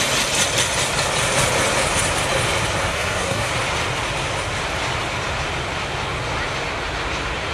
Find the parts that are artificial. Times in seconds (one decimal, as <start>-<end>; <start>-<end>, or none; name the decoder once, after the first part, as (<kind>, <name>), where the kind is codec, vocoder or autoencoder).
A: 2.9-3.5 (codec, SNAC)